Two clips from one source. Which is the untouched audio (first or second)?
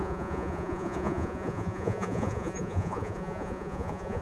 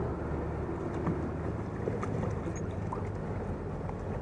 second